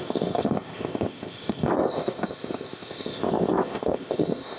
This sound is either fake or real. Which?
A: fake